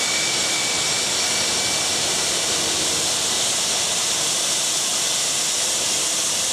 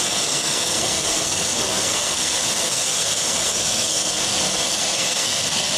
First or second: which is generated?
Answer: second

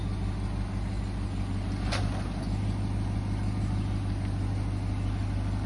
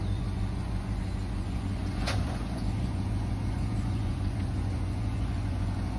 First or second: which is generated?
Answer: second